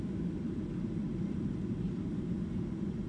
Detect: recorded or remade recorded